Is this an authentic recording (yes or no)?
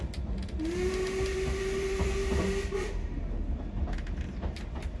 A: yes